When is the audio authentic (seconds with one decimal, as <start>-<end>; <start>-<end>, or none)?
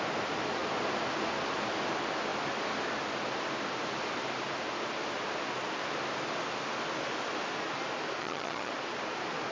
0.0-8.2; 8.7-9.5